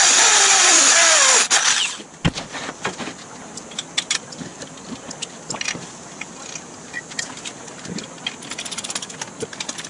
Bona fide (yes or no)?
yes